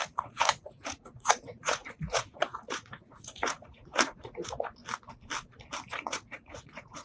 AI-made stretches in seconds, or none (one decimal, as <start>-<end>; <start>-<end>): 0.0-4.8; 5.9-7.0